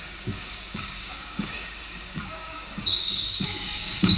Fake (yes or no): yes